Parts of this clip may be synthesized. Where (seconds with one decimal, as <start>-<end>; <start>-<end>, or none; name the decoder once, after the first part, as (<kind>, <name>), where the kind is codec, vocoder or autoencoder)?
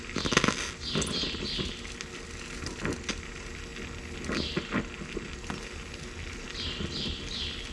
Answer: none